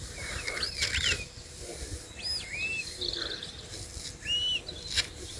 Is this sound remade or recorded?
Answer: recorded